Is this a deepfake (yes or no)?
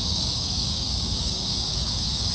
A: yes